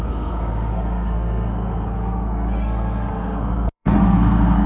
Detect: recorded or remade remade